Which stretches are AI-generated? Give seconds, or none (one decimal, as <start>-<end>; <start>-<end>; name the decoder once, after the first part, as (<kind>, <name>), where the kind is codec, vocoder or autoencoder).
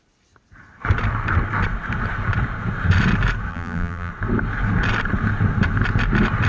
3.5-4.1 (vocoder, BigVGAN v2)